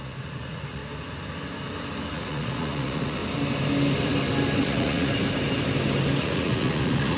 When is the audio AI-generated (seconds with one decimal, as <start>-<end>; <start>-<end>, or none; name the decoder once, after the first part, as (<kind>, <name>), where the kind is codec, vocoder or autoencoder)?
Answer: 0.0-0.8 (vocoder, Vocos); 2.1-3.2; 4.6-5.1; 6.2-7.2